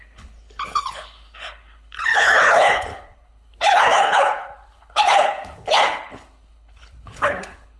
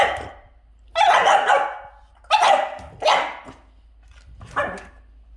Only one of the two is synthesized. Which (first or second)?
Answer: first